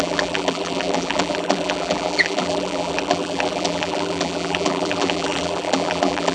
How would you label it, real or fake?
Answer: fake